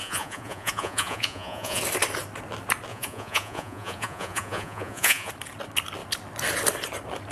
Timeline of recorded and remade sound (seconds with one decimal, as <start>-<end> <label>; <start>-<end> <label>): 0.0-1.8 remade; 1.8-2.9 recorded; 2.9-5.3 remade; 5.3-7.3 recorded